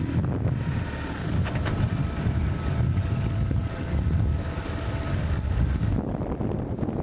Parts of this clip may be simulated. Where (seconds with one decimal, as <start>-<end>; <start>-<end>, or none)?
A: 2.0-6.2